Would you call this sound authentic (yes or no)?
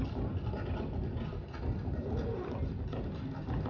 yes